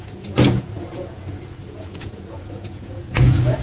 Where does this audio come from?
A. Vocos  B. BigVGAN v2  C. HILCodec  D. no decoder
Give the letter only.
A